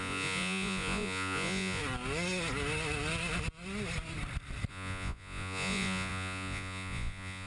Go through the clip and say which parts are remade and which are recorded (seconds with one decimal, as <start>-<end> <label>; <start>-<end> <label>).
0.0-1.8 remade; 1.8-4.7 recorded; 4.7-7.5 remade